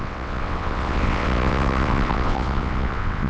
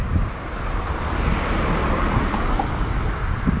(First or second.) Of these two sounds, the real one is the second